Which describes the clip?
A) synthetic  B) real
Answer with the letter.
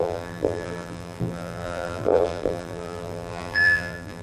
A